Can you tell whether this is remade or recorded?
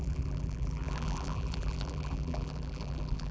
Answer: remade